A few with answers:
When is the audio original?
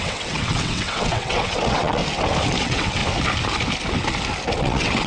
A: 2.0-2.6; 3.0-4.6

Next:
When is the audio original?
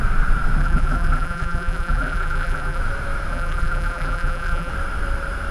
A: 0.0-0.6; 2.8-3.3; 4.7-5.5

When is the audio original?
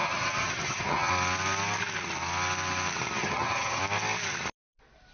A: 1.1-3.2; 3.8-5.1